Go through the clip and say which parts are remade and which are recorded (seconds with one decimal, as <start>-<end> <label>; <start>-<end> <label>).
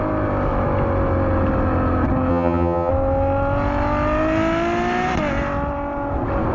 0.0-2.3 recorded; 2.3-2.9 remade; 2.9-6.5 recorded